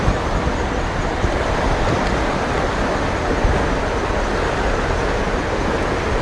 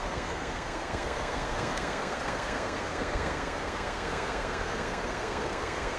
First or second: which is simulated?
second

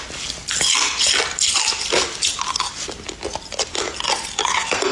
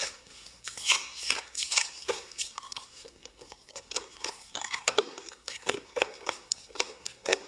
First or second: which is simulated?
second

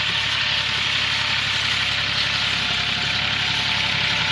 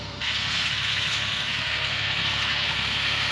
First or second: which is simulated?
second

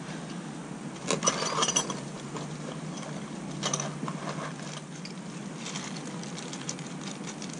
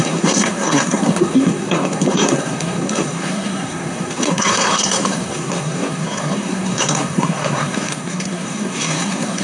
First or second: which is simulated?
second